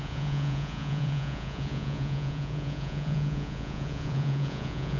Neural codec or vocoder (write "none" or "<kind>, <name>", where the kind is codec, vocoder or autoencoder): vocoder, Vocos